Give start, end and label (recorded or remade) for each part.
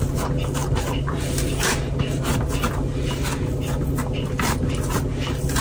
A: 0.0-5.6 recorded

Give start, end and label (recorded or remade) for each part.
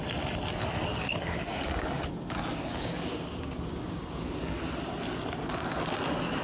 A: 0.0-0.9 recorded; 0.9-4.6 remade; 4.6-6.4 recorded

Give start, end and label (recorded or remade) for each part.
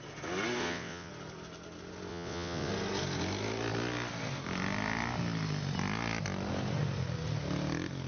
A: 0.0-0.6 recorded; 0.6-1.1 remade; 1.1-2.1 recorded; 2.1-2.7 remade; 2.7-8.1 recorded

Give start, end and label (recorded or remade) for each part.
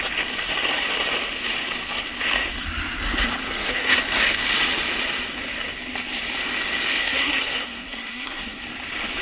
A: 0.0-3.4 recorded; 3.4-4.0 remade; 4.0-7.0 recorded; 7.0-8.6 remade; 8.6-9.2 recorded